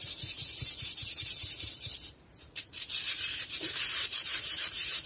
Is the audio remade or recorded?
remade